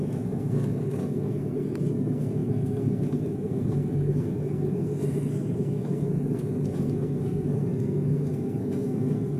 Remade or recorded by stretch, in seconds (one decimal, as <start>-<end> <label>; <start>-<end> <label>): 0.0-9.4 remade